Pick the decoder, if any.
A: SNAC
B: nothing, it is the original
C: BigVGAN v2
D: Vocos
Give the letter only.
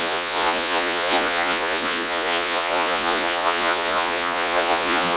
D